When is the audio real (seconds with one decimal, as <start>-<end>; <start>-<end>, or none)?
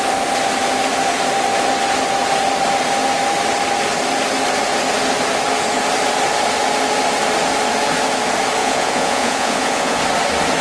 0.0-8.6; 10.0-10.6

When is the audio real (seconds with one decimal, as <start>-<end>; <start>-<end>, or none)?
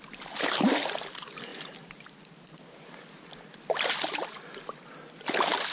0.0-5.7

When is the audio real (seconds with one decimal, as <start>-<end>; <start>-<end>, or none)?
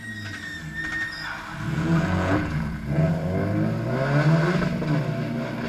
0.0-1.7; 3.1-5.7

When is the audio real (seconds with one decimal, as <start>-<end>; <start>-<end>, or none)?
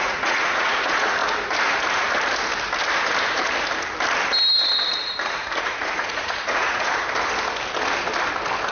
1.2-4.9; 6.9-8.7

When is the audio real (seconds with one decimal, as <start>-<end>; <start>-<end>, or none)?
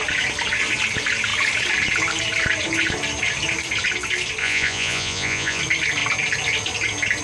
0.0-4.4; 5.6-7.2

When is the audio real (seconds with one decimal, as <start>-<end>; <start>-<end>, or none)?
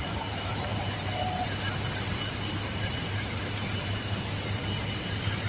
0.0-5.5